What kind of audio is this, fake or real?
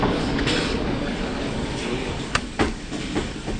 fake